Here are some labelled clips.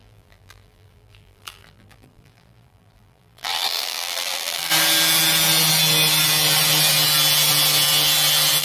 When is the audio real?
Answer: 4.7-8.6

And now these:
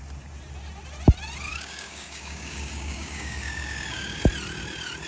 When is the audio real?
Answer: 0.0-1.5; 4.2-5.1